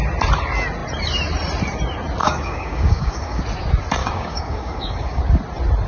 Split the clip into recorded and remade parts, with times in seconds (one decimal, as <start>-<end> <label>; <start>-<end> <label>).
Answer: 0.0-2.2 recorded; 2.2-3.4 remade; 3.4-4.0 recorded; 4.0-5.2 remade; 5.2-5.9 recorded